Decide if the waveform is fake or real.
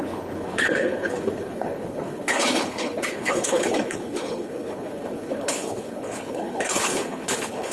fake